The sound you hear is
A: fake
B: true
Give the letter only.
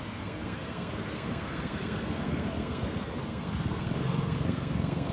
A